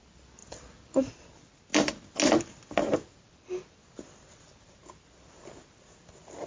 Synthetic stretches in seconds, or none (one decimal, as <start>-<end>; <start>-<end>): none